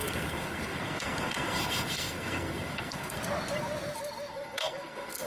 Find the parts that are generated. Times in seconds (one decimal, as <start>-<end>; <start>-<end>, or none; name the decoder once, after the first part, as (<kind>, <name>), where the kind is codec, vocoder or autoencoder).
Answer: 0.0-3.2 (codec, SNAC); 4.3-5.3